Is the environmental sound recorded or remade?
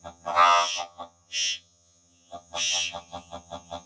remade